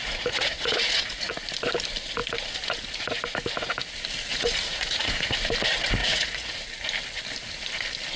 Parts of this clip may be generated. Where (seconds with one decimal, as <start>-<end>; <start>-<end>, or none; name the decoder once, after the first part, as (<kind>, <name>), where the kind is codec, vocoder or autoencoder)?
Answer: 0.0-1.3 (vocoder, Vocos); 4.3-5.3; 6.0-6.5